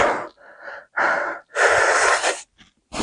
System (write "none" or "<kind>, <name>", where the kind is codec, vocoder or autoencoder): none